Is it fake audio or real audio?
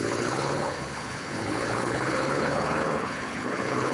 fake